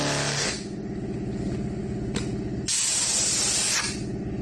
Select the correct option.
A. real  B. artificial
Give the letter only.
A